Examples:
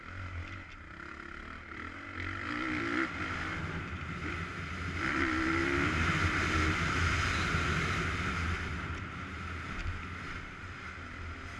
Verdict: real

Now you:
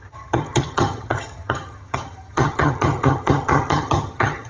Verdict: fake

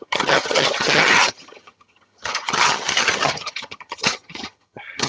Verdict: fake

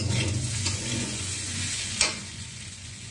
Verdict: fake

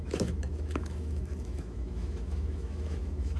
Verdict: fake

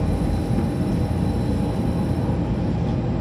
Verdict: real